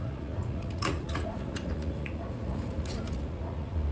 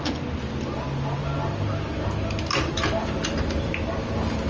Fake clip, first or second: first